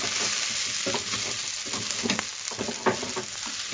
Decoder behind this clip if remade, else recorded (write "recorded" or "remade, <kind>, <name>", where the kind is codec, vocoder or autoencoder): recorded